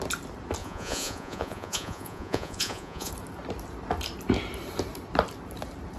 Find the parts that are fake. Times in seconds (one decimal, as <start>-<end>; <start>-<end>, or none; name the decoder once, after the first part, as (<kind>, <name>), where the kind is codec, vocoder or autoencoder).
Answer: 0.6-3.1 (vocoder, Vocos)